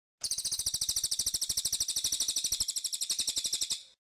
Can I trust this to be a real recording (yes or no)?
yes